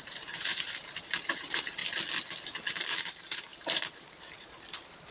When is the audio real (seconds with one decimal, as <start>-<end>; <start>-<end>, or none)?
1.8-2.9